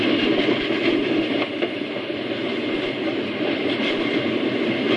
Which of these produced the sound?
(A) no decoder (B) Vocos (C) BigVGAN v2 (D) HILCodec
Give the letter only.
C